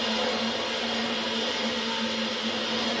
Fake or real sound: real